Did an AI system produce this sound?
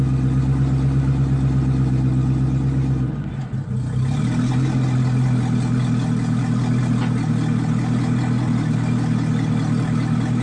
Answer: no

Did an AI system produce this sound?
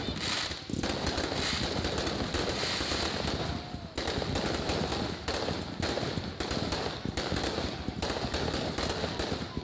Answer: no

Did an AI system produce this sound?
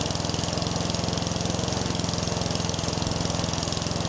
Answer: no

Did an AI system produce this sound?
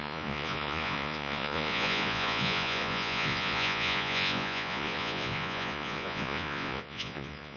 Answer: yes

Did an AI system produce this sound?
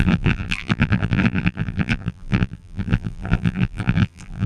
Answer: yes